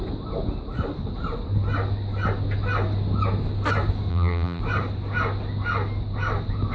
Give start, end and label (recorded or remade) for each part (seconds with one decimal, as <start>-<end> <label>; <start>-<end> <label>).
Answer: 0.0-4.1 recorded; 4.1-4.6 remade; 4.6-6.7 recorded